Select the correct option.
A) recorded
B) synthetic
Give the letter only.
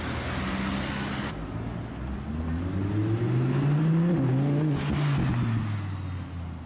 A